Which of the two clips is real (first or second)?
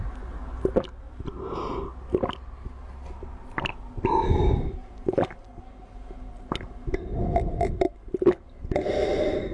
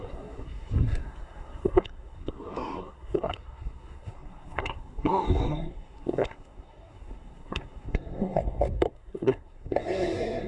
first